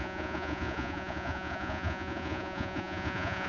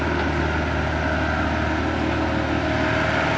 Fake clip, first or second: first